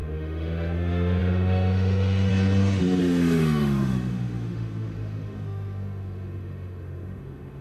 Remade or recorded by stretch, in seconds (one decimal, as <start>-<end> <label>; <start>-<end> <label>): 0.0-2.3 remade; 2.3-3.0 recorded; 3.0-7.6 remade

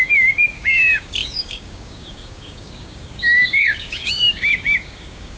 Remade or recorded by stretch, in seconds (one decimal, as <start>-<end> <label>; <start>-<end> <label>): 0.0-5.4 remade

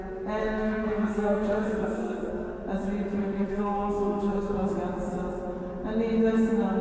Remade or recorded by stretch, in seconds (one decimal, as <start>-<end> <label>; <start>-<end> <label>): 0.0-0.4 recorded; 0.4-2.3 remade; 2.3-3.2 recorded; 3.2-4.7 remade; 4.7-6.8 recorded

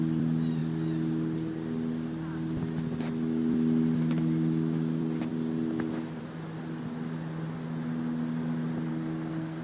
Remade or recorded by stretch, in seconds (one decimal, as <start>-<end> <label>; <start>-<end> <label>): 0.0-8.9 recorded; 8.9-9.6 remade

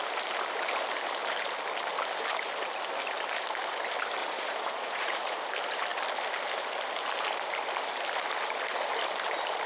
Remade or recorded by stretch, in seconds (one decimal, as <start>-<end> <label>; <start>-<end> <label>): 0.0-4.2 recorded; 4.2-5.4 remade; 5.4-9.7 recorded